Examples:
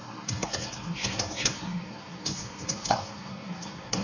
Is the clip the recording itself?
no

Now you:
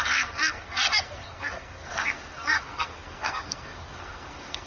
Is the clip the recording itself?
no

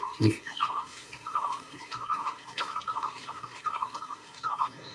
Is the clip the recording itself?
no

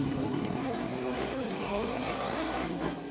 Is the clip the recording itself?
no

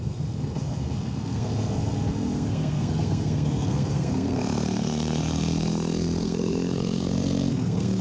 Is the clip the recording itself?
no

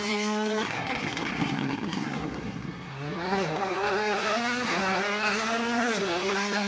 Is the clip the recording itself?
no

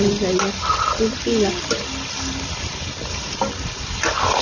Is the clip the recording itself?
yes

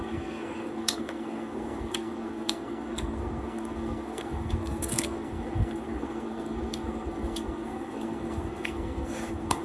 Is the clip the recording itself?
no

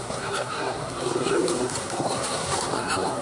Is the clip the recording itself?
no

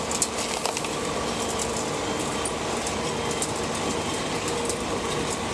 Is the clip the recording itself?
yes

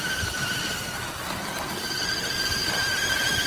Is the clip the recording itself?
yes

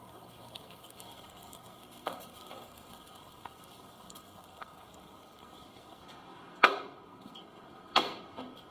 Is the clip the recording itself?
no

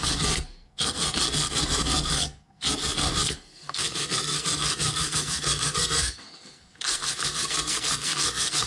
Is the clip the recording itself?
no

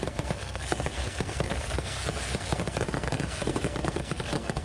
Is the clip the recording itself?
no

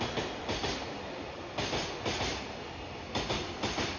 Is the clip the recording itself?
yes